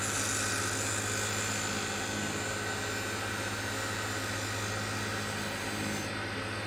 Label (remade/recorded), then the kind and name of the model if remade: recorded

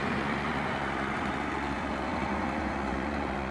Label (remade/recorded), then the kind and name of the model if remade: remade, vocoder, Vocos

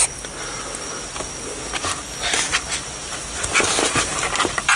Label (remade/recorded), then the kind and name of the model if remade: recorded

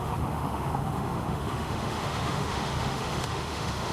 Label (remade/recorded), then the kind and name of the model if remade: remade, autoencoder, DAC-VAE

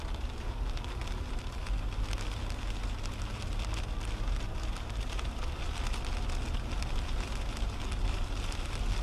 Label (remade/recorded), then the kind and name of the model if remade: recorded